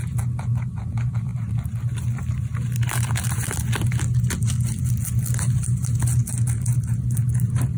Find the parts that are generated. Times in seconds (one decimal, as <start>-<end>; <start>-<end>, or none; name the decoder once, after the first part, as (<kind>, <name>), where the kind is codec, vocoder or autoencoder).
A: none